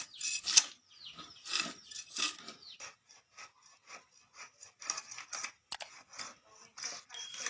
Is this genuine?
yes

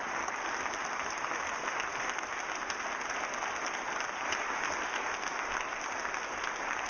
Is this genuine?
yes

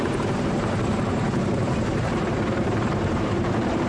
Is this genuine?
no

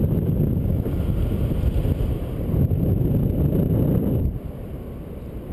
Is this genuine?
yes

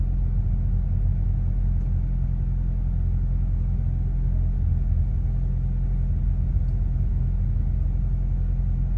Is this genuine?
yes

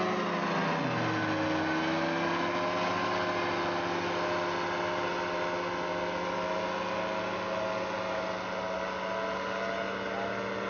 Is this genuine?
yes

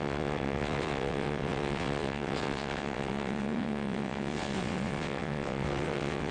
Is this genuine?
no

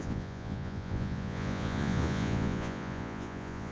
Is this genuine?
no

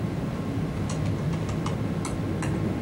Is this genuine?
yes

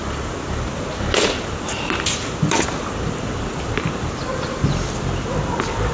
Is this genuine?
yes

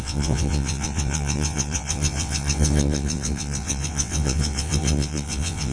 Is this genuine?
no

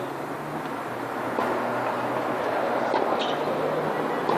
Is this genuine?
yes